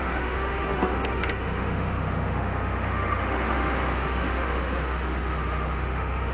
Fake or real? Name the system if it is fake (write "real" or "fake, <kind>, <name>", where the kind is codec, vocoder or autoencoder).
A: fake, autoencoder, DAC-VAE